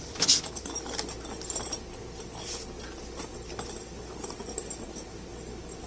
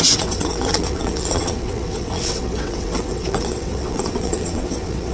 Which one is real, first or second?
first